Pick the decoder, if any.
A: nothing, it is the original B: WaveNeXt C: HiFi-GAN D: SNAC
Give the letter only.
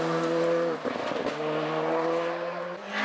A